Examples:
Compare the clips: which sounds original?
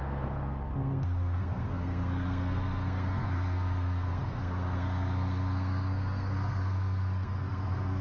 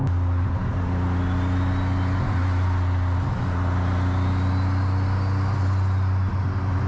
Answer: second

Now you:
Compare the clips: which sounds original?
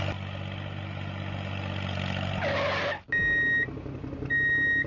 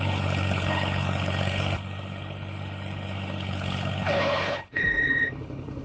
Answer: first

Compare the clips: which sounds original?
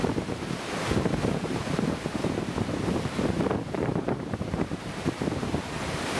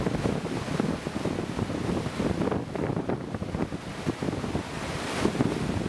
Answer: second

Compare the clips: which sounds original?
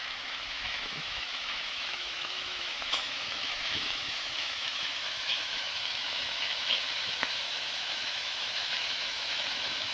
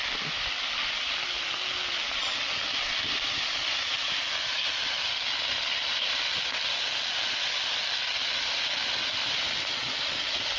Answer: second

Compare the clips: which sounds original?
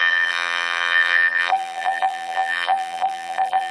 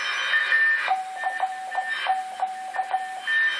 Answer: second